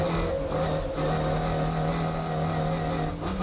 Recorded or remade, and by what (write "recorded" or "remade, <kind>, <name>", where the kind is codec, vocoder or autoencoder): recorded